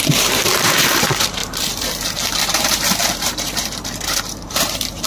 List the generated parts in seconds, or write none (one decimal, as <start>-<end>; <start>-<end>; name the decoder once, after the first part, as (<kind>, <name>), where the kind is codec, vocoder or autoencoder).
0.0-5.1 (vocoder, BigVGAN v2)

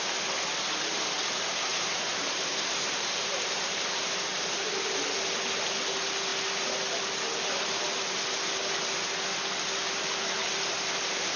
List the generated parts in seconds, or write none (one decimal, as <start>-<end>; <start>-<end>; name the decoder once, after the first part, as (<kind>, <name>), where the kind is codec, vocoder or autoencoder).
1.7-4.5 (vocoder, BigVGAN v2)

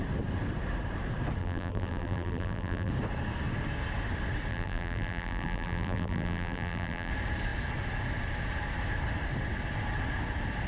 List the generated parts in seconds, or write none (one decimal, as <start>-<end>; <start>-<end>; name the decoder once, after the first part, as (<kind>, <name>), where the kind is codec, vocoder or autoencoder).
1.4-2.9 (vocoder, BigVGAN v2); 4.5-7.1